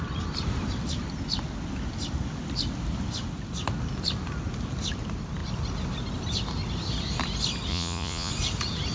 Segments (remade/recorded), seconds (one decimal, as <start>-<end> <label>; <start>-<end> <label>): 0.0-7.7 recorded; 7.7-8.3 remade; 8.3-8.9 recorded